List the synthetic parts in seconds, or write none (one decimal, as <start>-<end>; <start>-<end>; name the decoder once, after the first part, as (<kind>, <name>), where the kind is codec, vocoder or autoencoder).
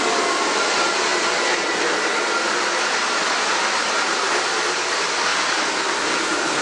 0.0-6.6 (vocoder, BigVGAN v2)